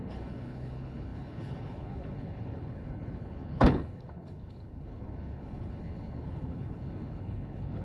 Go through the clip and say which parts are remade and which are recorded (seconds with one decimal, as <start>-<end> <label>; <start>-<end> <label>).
0.0-7.8 remade